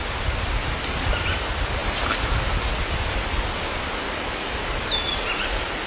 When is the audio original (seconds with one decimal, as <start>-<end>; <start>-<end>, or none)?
0.0-5.9